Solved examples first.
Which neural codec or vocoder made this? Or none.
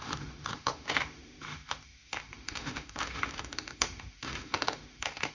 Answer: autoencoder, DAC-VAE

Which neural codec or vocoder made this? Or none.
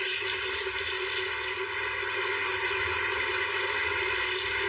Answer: none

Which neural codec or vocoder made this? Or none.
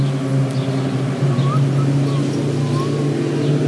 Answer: none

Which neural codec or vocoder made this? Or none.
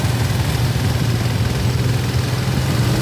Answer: none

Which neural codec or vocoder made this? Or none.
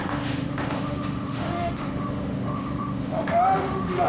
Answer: autoencoder, DAC-VAE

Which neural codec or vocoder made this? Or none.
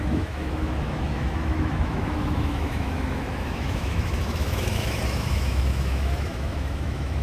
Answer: autoencoder, DAC-VAE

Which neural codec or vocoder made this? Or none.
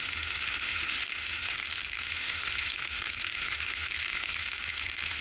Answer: autoencoder, DAC-VAE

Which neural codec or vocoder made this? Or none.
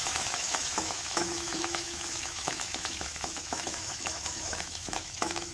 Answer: autoencoder, DAC-VAE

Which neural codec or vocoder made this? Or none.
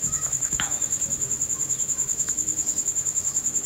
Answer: autoencoder, DAC-VAE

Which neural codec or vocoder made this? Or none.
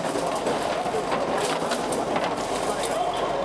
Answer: none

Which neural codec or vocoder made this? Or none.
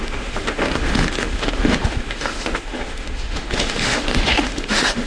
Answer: autoencoder, DAC-VAE